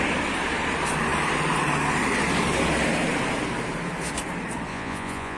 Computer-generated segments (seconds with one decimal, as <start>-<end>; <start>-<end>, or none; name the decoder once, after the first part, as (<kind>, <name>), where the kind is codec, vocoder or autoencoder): 4.7-5.4 (vocoder, Vocos)